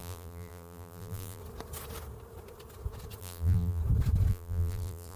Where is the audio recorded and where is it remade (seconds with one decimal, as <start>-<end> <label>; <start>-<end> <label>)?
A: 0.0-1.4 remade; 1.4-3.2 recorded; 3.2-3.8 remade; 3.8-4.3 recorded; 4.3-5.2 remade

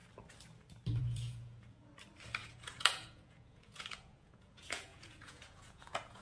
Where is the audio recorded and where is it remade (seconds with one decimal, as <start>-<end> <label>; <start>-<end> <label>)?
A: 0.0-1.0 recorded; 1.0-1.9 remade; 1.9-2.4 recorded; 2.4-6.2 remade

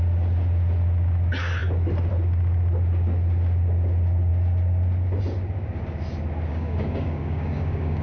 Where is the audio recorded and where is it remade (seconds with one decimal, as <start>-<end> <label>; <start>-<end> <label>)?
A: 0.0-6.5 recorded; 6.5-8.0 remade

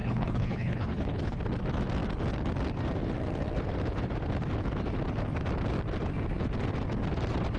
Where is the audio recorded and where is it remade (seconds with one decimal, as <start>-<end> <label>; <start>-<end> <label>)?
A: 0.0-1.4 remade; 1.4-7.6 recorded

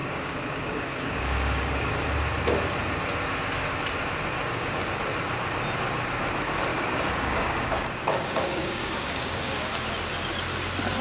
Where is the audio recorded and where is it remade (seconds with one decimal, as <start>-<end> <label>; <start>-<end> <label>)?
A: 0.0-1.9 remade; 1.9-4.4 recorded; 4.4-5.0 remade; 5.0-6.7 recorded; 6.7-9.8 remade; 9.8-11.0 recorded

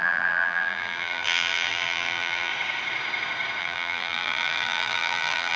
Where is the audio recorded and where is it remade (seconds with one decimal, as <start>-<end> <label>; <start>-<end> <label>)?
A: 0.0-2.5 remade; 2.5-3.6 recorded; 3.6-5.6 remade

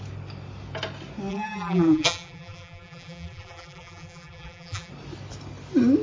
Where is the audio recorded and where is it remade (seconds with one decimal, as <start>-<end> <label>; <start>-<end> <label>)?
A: 0.0-1.3 recorded; 1.3-4.9 remade; 4.9-6.0 recorded

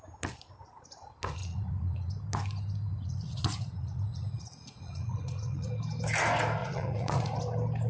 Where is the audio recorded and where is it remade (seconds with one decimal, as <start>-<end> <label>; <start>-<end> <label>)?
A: 0.0-1.4 recorded; 1.4-2.1 remade; 2.1-2.9 recorded; 2.9-5.7 remade; 5.7-6.6 recorded; 6.6-7.4 remade; 7.4-7.9 recorded